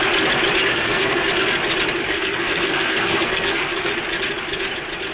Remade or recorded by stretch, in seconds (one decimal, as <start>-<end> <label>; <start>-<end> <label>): 0.0-0.7 recorded; 0.7-1.3 remade; 1.3-2.0 recorded; 2.0-3.9 remade; 3.9-5.1 recorded